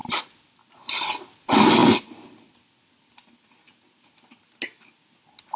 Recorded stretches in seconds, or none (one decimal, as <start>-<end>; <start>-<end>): 0.0-5.6